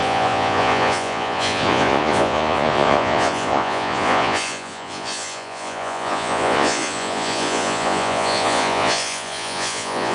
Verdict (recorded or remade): remade